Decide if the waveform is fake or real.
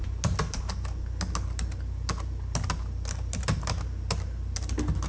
real